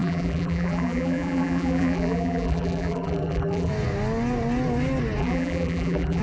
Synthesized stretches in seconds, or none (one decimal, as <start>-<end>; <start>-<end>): 0.0-3.7; 5.2-6.2